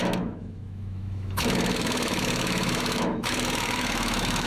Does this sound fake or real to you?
fake